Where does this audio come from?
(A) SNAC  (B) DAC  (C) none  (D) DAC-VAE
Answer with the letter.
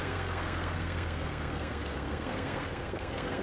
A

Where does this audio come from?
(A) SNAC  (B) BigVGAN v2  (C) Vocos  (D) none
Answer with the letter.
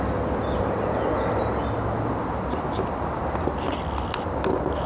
D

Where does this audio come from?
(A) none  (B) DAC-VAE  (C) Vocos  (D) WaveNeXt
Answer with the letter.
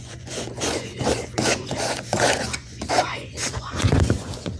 C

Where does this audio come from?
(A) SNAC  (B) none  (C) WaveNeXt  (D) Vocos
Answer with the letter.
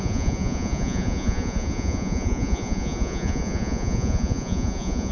D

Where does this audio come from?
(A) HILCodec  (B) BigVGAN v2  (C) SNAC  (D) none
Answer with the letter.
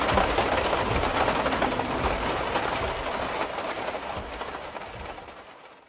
D